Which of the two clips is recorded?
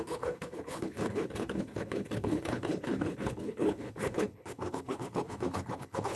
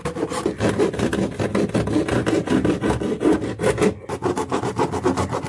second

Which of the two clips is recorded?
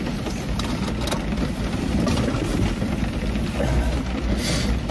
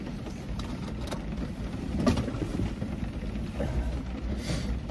first